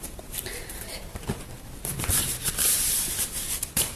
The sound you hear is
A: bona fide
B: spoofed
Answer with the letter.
B